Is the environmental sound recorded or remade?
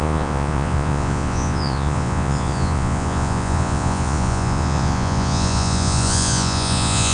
remade